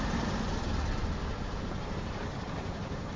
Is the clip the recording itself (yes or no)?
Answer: no